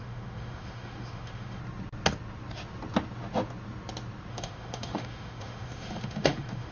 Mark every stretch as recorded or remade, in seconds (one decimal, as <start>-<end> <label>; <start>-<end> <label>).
0.0-1.6 remade; 1.6-4.3 recorded; 4.3-6.7 remade